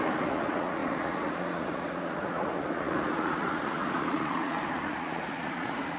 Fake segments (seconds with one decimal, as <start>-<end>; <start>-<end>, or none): 0.0-6.0